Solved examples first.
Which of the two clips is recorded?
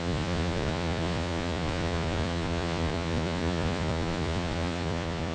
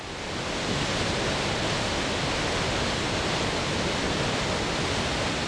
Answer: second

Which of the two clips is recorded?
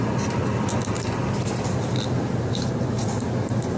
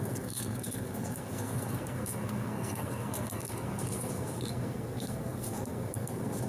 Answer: first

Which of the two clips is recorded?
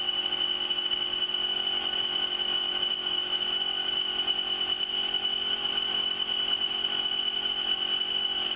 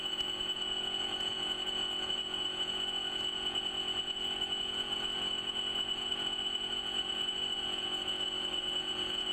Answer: first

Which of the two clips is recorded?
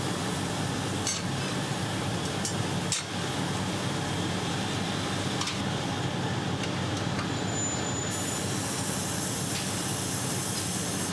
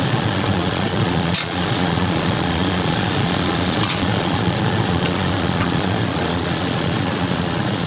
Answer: first